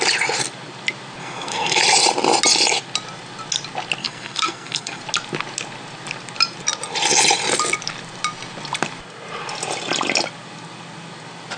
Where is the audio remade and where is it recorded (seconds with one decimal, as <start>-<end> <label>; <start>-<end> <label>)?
0.0-1.2 recorded; 1.2-1.8 remade; 1.8-4.0 recorded; 4.0-5.0 remade; 5.0-11.6 recorded